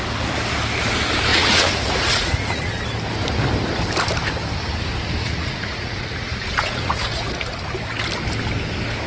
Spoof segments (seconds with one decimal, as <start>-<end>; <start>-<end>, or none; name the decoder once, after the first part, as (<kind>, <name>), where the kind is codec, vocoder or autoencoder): 1.3-2.7 (vocoder, Vocos); 5.2-7.6